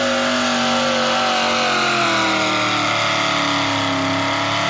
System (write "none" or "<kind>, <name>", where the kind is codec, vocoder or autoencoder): none